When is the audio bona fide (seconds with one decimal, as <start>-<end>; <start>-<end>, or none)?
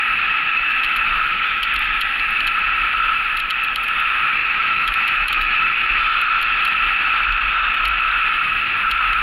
0.0-0.5; 1.7-4.4; 6.0-9.2